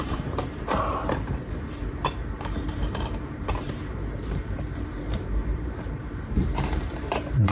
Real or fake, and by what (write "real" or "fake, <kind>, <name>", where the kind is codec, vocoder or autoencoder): fake, vocoder, BigVGAN v2